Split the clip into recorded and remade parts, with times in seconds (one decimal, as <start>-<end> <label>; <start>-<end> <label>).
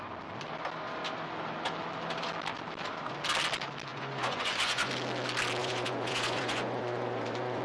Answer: 0.0-3.9 recorded; 3.9-4.9 remade; 4.9-5.6 recorded; 5.6-7.6 remade